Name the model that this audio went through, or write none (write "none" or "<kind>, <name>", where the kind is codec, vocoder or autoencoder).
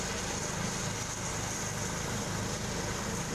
none